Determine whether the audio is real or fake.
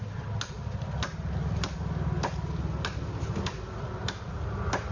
real